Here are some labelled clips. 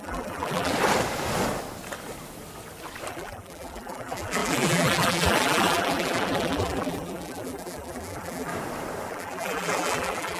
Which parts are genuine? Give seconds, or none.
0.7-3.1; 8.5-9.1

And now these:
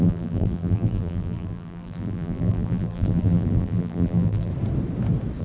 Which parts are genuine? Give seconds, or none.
4.5-5.4

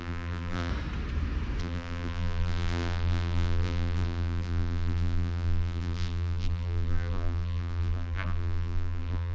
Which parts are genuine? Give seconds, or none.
0.7-1.6

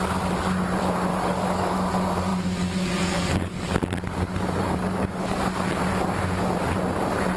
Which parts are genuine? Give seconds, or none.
0.0-1.1; 1.9-2.3; 5.4-7.4

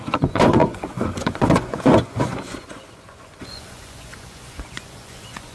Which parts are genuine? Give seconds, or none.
none